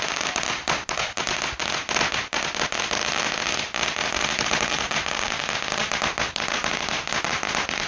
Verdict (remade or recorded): recorded